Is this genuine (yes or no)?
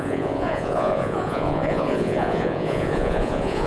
no